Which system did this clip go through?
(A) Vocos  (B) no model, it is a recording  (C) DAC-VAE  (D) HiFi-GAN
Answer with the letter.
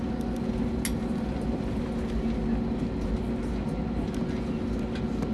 B